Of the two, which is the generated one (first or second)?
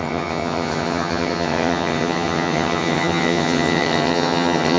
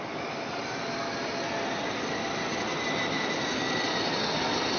first